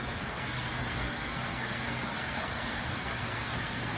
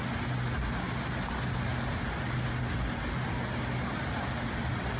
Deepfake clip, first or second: first